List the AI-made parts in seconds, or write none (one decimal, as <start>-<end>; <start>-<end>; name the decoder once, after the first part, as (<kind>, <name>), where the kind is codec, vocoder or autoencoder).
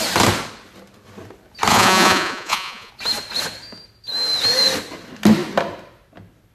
1.7-2.9 (vocoder, Vocos)